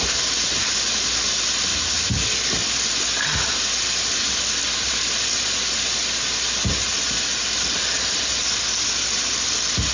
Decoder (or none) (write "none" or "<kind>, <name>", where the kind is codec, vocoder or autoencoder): none